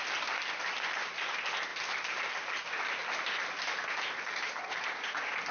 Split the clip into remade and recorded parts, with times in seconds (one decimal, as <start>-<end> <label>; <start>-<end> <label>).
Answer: 0.0-5.5 recorded